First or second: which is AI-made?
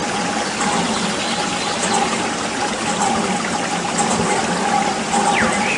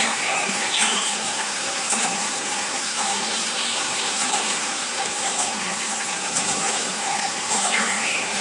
second